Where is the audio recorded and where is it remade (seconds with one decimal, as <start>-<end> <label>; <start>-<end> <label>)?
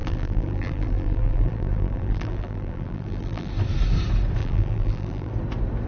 0.0-3.5 remade; 3.5-4.4 recorded; 4.4-5.3 remade; 5.3-5.9 recorded